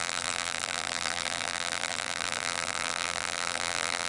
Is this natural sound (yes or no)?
no